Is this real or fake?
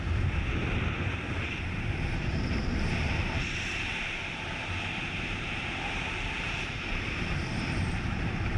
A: fake